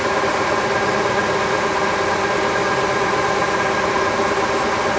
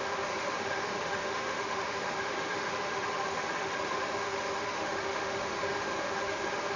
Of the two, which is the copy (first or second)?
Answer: second